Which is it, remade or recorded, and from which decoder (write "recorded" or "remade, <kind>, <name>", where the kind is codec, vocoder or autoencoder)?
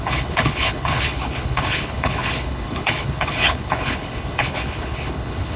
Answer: remade, codec, HILCodec